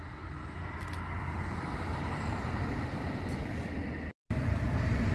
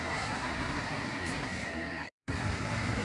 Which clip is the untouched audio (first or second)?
first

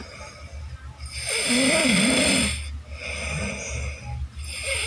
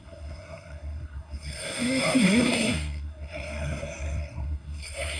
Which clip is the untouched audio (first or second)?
first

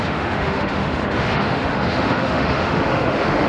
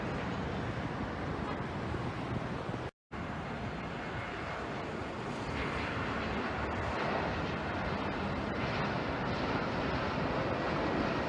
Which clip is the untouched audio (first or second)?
second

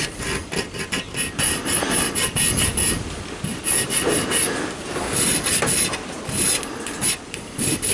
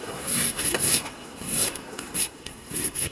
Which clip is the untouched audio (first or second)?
first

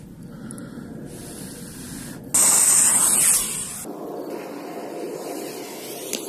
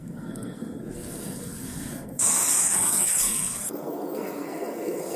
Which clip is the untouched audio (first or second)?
first